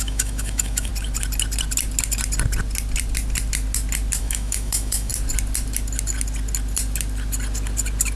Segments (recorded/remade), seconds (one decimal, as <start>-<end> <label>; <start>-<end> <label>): 0.0-0.9 remade; 0.9-4.2 recorded; 4.2-5.1 remade; 5.1-8.2 recorded